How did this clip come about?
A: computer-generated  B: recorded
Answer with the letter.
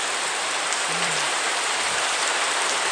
A